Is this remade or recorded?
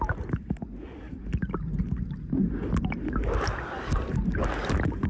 recorded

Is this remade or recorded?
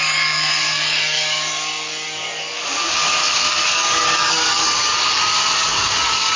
remade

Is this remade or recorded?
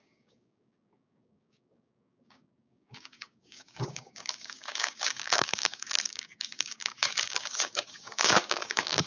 remade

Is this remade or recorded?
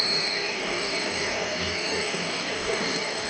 remade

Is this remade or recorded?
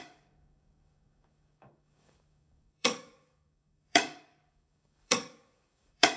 remade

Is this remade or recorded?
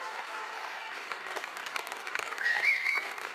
remade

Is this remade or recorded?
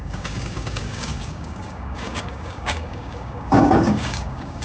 remade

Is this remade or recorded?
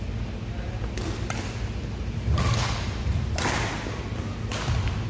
recorded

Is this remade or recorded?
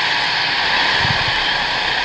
recorded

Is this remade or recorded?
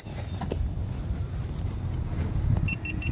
recorded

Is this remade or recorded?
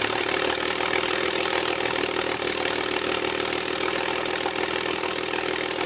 recorded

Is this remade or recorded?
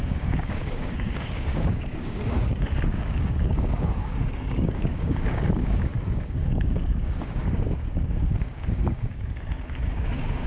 remade